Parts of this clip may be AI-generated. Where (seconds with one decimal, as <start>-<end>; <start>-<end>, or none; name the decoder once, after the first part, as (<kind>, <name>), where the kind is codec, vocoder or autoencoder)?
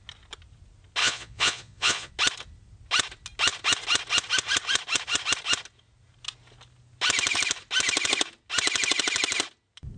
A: 1.0-2.1 (vocoder, Vocos)